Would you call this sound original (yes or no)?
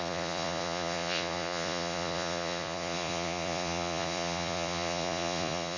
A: no